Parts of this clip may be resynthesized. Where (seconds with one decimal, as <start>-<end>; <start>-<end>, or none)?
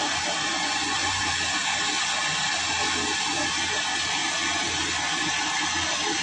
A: 0.6-1.2